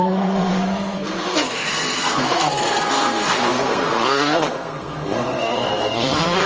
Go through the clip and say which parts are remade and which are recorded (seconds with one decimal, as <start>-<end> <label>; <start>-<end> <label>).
0.0-6.5 remade